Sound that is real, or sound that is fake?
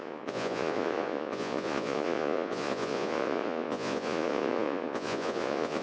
fake